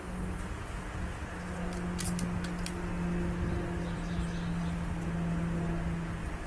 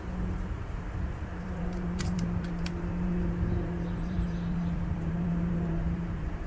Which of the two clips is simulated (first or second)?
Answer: second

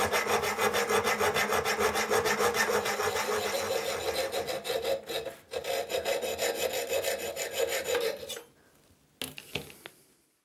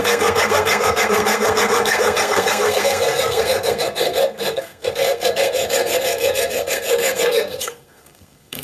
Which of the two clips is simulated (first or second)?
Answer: second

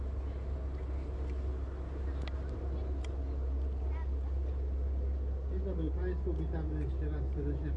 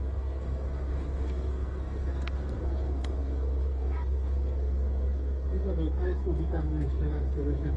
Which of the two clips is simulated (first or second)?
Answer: second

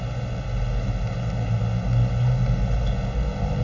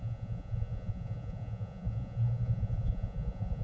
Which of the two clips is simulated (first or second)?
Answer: second